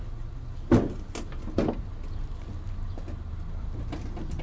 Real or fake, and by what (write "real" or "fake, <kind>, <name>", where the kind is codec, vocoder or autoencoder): real